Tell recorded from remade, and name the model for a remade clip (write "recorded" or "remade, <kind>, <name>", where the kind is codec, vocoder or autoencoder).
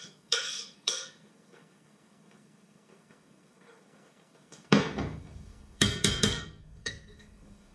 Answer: remade, codec, SNAC